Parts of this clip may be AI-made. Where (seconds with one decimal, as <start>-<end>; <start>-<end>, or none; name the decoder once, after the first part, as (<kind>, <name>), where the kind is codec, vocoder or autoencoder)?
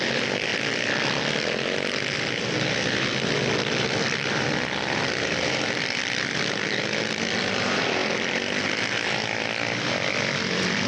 0.0-0.5 (vocoder, BigVGAN v2); 3.5-8.0; 8.6-10.9